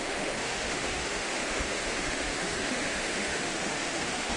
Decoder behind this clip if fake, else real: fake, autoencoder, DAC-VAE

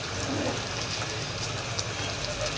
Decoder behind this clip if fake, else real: real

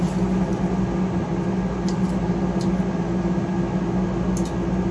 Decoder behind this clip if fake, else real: real